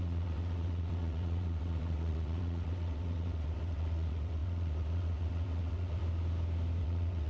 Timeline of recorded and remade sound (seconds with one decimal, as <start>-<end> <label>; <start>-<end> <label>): 0.0-6.0 remade; 6.0-6.8 recorded; 6.8-7.3 remade